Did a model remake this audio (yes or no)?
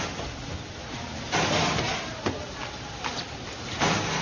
no